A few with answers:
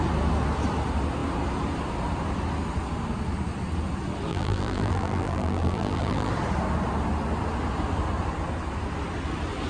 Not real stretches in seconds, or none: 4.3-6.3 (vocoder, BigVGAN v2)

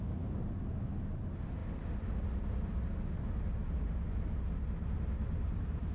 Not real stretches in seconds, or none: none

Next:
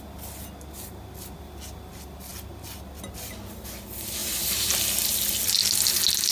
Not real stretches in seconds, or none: 4.2-4.7 (vocoder, BigVGAN v2)

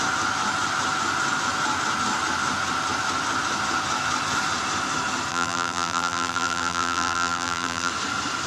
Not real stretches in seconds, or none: 5.3-7.9 (vocoder, BigVGAN v2)